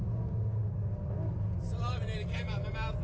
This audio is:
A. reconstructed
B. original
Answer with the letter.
B